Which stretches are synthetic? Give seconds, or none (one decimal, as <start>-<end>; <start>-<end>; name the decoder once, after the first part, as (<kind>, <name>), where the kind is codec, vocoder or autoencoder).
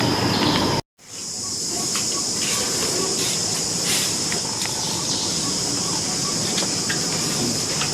3.4-7.1 (vocoder, BigVGAN v2)